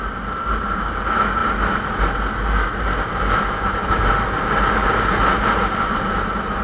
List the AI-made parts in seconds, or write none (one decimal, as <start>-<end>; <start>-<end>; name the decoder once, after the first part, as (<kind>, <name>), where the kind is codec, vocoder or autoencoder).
3.1-4.1 (vocoder, BigVGAN v2); 4.8-6.6